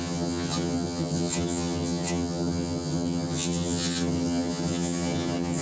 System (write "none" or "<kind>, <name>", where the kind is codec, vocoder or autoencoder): vocoder, HiFi-GAN